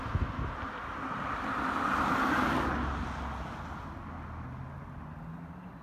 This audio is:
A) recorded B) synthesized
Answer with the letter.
A